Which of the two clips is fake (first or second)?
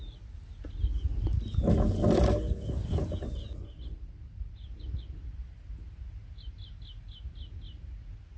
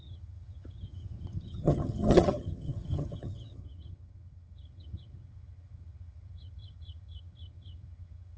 second